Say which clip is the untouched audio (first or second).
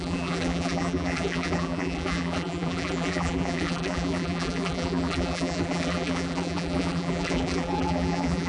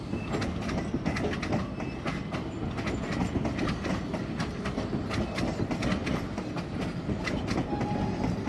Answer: second